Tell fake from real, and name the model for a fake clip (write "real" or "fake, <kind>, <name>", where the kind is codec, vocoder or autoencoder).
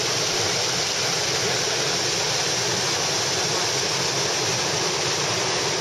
real